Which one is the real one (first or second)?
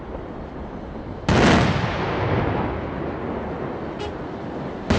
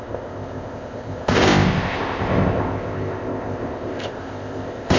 first